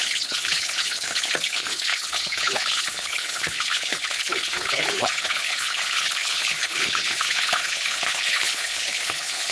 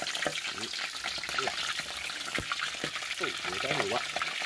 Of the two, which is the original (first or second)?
second